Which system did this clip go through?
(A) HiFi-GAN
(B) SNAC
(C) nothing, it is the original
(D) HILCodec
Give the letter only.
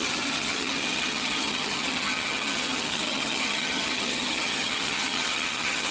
A